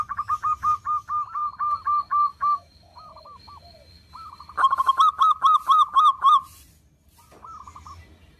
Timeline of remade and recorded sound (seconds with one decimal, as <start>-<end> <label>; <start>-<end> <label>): 0.0-2.3 recorded; 2.3-3.1 remade; 3.1-8.4 recorded